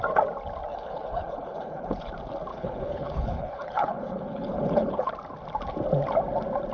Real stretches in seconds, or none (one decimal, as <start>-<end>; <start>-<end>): 0.0-0.7; 2.1-2.5; 5.1-6.7